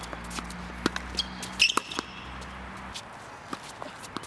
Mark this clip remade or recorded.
recorded